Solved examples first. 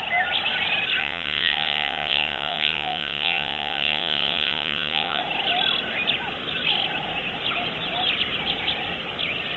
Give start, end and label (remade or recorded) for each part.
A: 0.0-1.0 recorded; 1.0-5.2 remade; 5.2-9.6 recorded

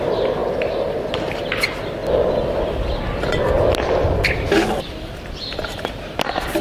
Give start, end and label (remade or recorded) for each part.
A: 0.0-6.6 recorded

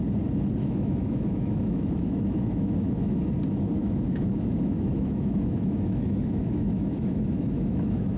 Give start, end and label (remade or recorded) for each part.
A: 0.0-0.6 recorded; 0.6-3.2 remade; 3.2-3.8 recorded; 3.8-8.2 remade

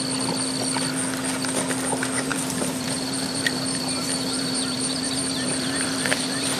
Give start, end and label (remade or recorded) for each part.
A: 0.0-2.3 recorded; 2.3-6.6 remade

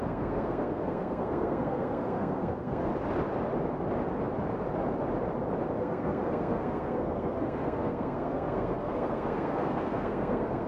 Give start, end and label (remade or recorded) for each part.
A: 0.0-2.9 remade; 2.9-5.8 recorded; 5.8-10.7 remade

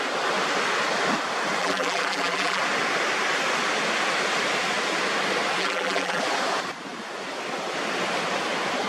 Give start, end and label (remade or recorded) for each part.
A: 0.0-1.6 recorded; 1.6-2.6 remade; 2.6-5.6 recorded; 5.6-6.2 remade; 6.2-8.9 recorded

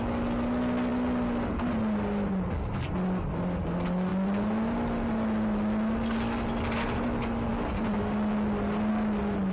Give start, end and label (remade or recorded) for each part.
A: 0.0-9.5 recorded